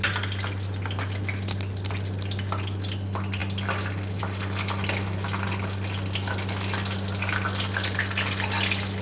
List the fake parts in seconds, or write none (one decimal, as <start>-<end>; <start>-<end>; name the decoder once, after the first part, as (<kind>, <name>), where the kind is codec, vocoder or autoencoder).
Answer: none